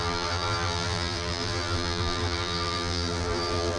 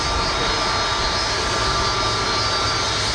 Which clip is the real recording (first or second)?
second